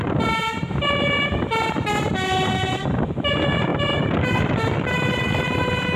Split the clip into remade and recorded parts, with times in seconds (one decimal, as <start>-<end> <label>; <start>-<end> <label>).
0.0-6.0 recorded